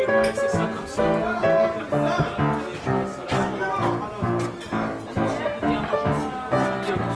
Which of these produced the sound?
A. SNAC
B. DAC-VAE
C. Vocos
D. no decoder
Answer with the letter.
D